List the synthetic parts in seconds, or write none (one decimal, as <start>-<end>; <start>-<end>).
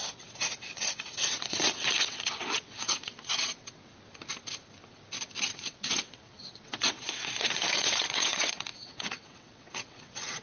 0.0-3.9; 5.5-10.4